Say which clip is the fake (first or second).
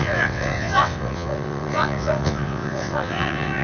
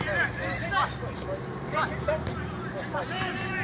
first